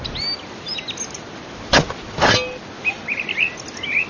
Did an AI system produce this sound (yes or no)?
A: no